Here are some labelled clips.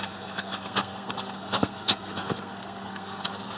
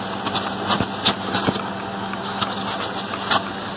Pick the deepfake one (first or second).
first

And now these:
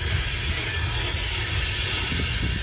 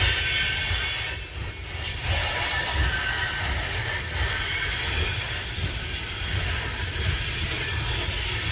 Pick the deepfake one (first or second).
second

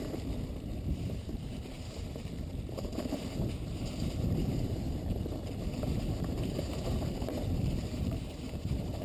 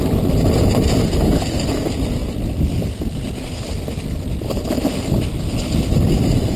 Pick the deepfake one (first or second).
first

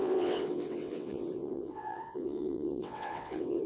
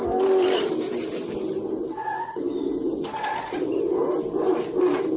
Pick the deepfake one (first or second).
first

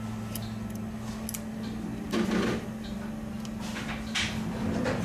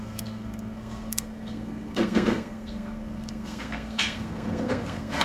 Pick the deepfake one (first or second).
second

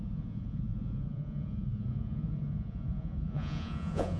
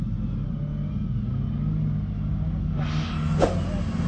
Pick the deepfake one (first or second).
first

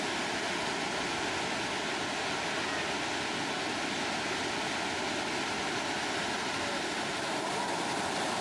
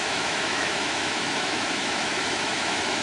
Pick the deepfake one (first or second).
second